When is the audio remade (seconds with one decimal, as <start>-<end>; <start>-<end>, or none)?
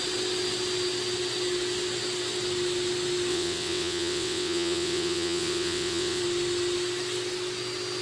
3.3-6.2